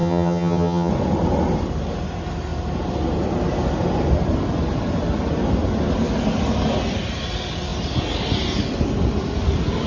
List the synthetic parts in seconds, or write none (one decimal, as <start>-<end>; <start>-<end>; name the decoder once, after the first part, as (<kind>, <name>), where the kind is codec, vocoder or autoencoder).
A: 0.0-0.9 (vocoder, HiFi-GAN)